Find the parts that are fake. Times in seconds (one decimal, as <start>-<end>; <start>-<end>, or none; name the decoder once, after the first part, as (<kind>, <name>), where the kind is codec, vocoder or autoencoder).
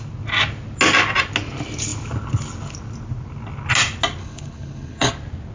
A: 4.2-5.1 (codec, HILCodec)